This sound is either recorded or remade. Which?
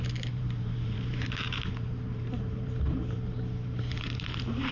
remade